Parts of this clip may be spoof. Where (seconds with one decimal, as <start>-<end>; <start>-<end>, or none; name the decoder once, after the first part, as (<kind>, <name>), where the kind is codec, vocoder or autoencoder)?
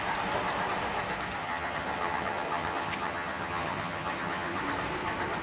1.4-4.6 (vocoder, HiFi-GAN)